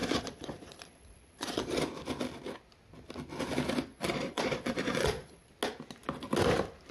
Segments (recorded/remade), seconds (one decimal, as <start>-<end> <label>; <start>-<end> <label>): 0.0-1.7 remade; 1.7-3.9 recorded; 3.9-5.5 remade; 5.5-6.9 recorded